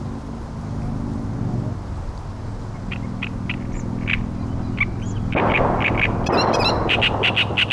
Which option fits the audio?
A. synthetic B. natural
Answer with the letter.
B